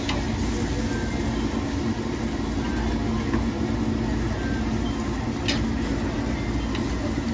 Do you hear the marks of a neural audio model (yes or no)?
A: no